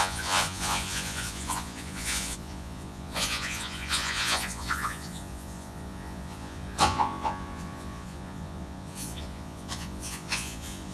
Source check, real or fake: fake